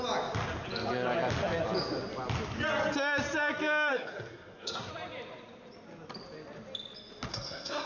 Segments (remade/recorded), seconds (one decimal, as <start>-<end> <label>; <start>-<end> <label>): 0.0-3.9 recorded; 3.9-4.9 remade; 4.9-7.3 recorded; 7.3-7.9 remade